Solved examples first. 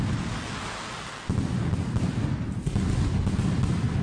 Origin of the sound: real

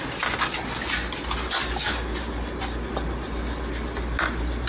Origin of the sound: real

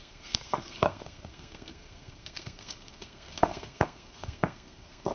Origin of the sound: fake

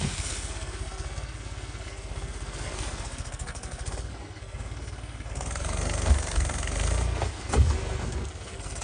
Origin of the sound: fake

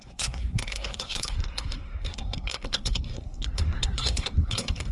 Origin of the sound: fake